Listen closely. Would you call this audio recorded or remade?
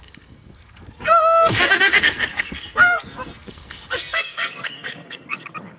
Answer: remade